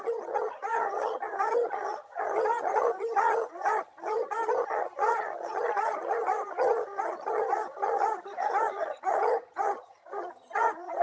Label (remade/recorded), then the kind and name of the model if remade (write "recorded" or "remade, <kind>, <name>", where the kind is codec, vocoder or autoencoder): remade, vocoder, HiFi-GAN